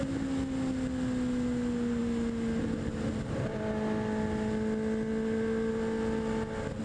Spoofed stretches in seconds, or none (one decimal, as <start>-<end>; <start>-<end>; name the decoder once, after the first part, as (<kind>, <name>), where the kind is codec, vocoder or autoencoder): none